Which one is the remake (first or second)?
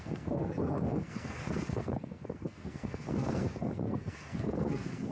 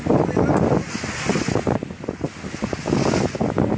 first